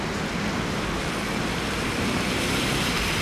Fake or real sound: fake